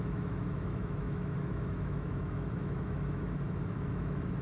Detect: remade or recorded remade